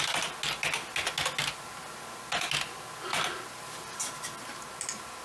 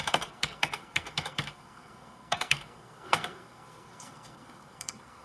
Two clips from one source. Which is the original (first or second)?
first